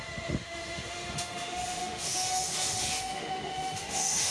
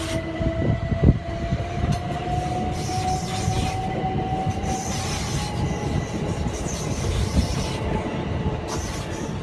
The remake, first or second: first